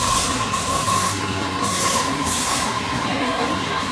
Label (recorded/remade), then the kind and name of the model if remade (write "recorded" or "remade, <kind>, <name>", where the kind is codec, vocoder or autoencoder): remade, codec, SNAC